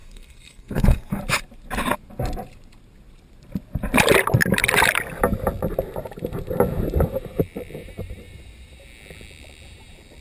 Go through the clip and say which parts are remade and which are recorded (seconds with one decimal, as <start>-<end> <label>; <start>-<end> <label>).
0.0-1.2 remade; 1.2-10.2 recorded